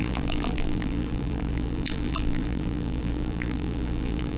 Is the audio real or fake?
fake